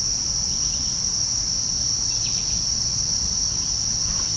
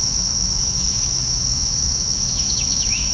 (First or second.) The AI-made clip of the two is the second